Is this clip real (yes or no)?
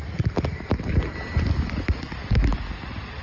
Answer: yes